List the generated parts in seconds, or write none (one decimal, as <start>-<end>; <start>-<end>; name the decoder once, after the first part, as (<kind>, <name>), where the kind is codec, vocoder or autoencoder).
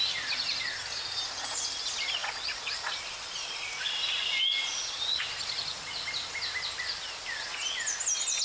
2.2-3.7 (vocoder, Vocos); 4.6-5.3